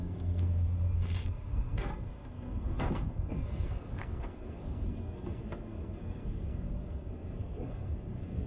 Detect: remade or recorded remade